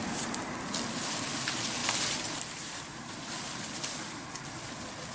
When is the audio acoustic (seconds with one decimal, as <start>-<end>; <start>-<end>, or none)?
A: 0.0-1.8